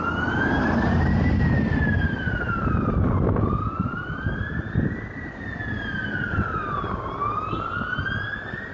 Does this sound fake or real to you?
real